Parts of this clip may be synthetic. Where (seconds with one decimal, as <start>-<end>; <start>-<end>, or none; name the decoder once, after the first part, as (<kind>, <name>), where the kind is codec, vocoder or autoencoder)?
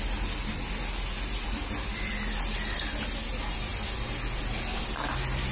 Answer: none